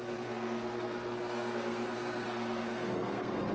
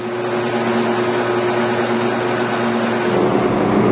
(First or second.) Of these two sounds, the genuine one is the second